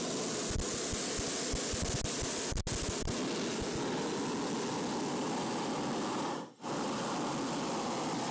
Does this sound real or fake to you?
real